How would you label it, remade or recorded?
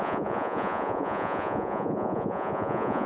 remade